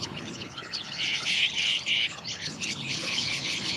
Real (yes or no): no